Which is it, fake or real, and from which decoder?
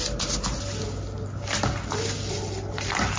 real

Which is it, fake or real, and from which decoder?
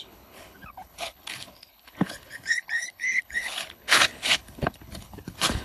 fake, codec, HILCodec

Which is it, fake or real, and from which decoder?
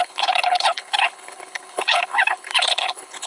fake, codec, HILCodec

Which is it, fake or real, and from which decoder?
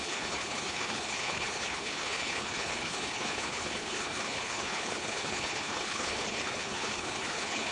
fake, codec, HILCodec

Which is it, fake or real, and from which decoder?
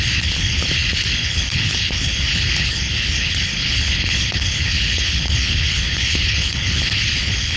fake, codec, HILCodec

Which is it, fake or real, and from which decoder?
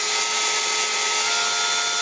real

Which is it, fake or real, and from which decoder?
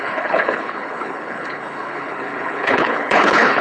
fake, codec, HILCodec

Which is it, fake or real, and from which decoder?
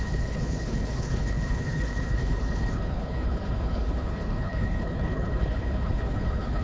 fake, codec, HILCodec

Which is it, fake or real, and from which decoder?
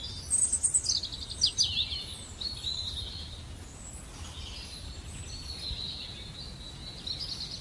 real